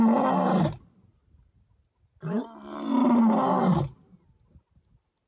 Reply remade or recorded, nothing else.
recorded